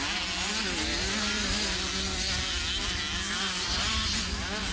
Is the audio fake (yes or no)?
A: no